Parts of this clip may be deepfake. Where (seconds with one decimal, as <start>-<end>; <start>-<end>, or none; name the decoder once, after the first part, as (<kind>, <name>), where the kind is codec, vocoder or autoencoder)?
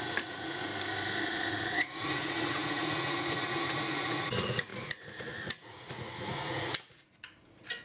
0.0-0.7 (vocoder, Vocos); 1.3-7.8